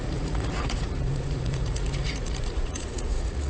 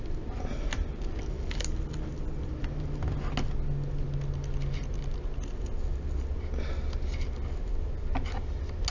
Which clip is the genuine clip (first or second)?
second